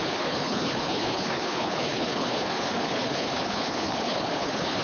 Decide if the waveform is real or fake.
fake